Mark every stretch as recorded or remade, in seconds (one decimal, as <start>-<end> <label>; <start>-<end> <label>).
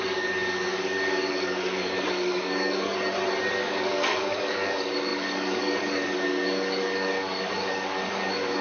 0.0-2.9 remade; 2.9-3.5 recorded; 3.5-8.6 remade